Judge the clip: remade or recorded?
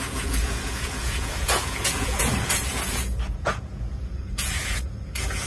remade